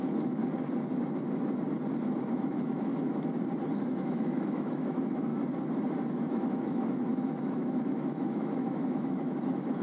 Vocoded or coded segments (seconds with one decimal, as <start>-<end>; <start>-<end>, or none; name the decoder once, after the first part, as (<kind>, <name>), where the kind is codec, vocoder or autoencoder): 0.0-0.4 (autoencoder, DAC-VAE); 2.3-2.9; 3.7-5.3; 6.1-9.8